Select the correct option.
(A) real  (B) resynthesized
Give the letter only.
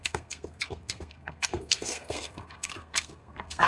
B